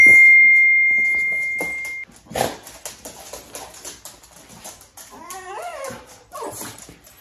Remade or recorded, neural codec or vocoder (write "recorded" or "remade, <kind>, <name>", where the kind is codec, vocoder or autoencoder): recorded